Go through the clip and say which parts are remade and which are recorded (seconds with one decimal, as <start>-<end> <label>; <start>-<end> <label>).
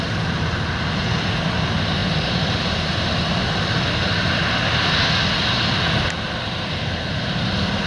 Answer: 0.0-7.9 recorded